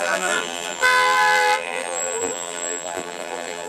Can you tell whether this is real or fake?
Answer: fake